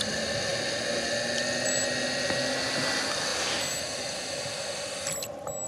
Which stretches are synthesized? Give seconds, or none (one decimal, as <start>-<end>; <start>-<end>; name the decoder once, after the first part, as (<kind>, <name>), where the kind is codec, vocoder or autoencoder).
none